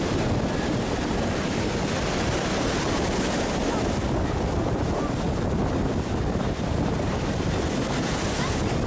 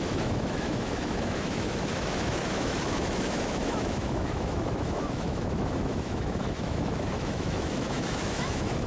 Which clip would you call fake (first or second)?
second